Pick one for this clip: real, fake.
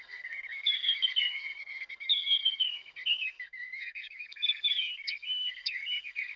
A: fake